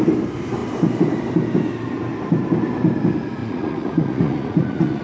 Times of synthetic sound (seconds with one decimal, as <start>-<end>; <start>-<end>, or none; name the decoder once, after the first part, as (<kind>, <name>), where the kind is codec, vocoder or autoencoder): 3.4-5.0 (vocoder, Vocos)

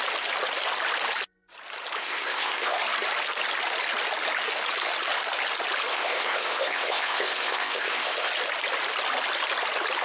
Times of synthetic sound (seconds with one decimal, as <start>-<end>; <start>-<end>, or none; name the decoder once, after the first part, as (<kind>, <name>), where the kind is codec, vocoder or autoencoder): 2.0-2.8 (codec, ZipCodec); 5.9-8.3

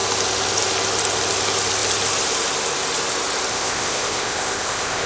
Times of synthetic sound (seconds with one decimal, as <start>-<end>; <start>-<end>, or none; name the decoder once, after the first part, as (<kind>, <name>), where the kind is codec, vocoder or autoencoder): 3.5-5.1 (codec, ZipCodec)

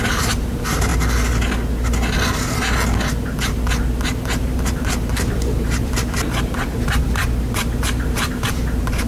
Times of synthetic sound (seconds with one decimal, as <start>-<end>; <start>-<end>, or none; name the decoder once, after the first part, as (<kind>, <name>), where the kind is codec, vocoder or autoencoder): 0.0-0.9 (vocoder, BigVGAN v2); 4.4-7.2; 8.0-9.1

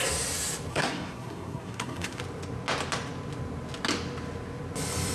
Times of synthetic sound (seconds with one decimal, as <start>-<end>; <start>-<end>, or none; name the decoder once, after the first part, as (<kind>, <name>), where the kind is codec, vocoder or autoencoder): 0.7-2.2 (codec, SNAC)

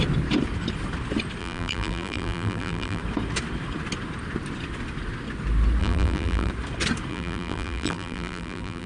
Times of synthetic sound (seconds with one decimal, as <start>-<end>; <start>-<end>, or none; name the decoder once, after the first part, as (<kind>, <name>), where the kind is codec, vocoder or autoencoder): 1.4-3.0 (vocoder, BigVGAN v2); 5.8-6.5; 7.1-8.9

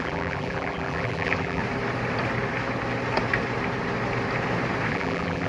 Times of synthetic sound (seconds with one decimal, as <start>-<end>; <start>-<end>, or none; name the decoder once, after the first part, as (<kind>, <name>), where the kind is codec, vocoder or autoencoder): 0.0-1.6 (vocoder, BigVGAN v2); 4.9-5.5

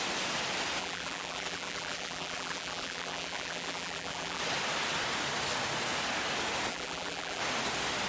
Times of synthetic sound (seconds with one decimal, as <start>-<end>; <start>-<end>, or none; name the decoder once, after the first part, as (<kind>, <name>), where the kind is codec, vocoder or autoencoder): 0.8-4.4 (vocoder, BigVGAN v2); 6.7-7.4